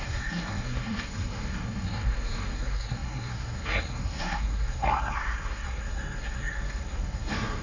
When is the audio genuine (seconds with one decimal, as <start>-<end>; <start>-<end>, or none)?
none